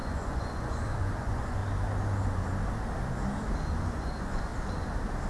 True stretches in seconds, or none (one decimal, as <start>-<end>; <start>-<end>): 1.6-3.7; 4.5-5.3